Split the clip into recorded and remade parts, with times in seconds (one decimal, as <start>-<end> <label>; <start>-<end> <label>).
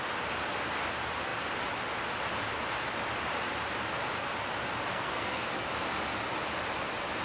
0.0-4.9 recorded; 4.9-5.5 remade; 5.5-7.2 recorded